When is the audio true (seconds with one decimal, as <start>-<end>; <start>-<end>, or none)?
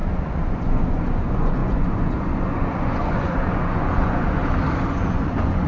4.4-4.9